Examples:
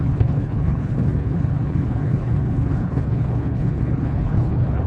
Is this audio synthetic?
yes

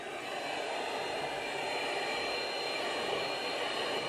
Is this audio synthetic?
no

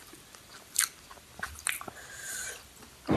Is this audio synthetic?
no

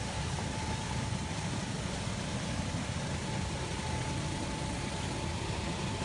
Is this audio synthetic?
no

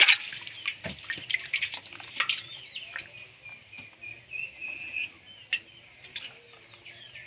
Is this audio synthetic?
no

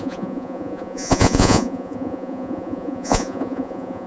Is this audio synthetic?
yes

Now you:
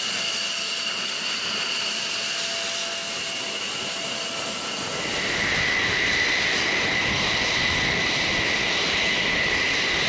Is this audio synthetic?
no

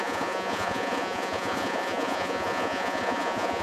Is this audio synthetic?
yes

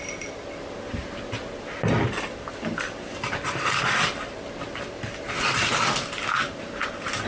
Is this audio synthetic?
no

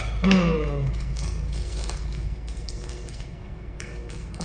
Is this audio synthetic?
yes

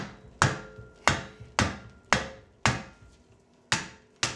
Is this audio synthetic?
no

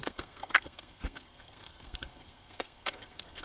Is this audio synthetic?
yes